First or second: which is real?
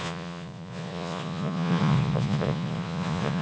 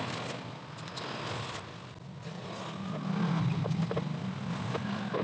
second